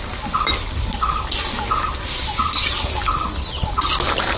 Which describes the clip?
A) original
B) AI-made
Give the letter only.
A